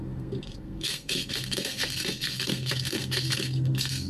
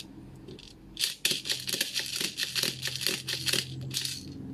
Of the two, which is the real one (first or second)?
second